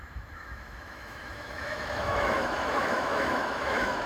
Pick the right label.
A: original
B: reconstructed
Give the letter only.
B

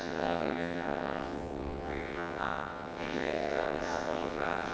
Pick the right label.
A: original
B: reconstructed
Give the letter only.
B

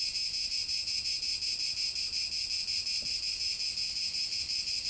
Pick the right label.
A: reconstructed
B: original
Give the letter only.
B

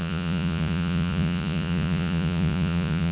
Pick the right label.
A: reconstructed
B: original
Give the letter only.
A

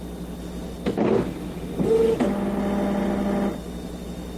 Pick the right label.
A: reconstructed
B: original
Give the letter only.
B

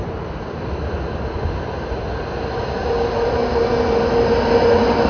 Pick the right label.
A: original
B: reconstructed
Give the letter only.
A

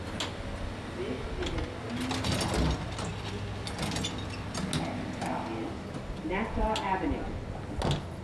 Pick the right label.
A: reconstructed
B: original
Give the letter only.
B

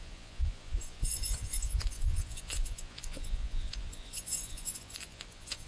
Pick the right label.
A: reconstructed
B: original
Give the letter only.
A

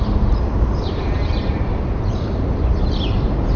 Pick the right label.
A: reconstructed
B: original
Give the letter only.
A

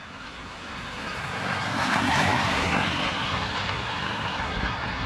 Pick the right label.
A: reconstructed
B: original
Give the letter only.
A